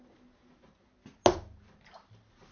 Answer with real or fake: real